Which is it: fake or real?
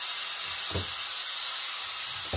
real